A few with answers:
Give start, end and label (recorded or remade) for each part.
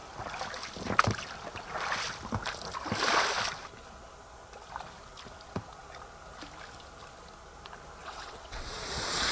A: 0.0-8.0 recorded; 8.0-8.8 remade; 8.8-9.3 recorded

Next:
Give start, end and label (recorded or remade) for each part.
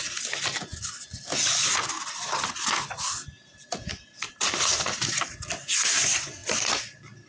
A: 0.0-7.3 recorded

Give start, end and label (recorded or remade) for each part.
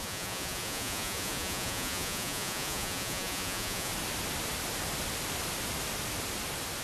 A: 0.0-3.9 remade; 3.9-6.8 recorded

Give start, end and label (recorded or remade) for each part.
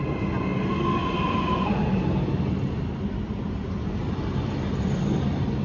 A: 0.0-5.6 recorded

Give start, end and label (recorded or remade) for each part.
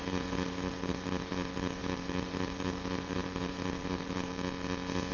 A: 0.0-4.3 remade; 4.3-5.1 recorded